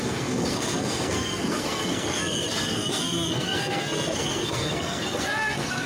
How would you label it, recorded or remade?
remade